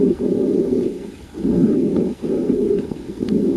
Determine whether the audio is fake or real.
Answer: fake